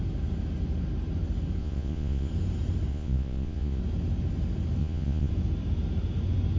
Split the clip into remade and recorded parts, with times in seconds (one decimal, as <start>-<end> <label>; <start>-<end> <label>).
0.0-1.6 recorded; 1.6-2.3 remade; 2.3-2.9 recorded; 2.9-3.8 remade; 3.8-4.8 recorded; 4.8-5.3 remade; 5.3-6.6 recorded